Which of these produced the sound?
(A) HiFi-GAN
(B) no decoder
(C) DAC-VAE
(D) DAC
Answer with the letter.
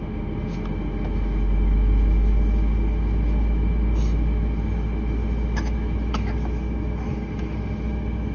C